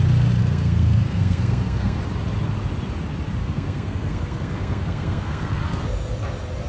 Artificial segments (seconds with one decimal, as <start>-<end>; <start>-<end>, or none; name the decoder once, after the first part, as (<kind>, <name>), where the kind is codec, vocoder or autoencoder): 0.4-2.0 (codec, SNAC); 3.4-5.8